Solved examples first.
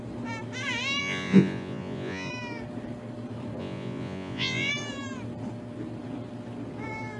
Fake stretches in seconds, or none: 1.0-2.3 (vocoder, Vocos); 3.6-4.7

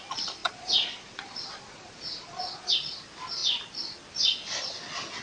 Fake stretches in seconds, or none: 0.4-2.7 (vocoder, Vocos)